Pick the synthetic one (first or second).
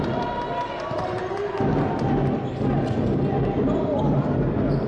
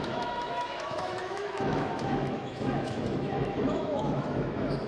second